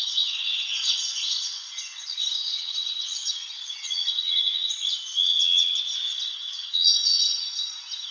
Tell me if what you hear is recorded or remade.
remade